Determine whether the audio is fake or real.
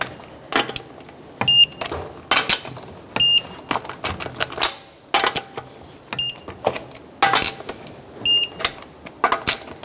real